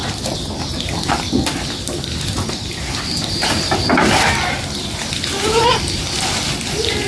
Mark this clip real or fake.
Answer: real